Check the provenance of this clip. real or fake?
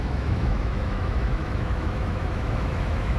fake